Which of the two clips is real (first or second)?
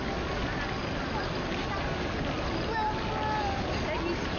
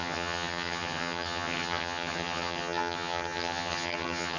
first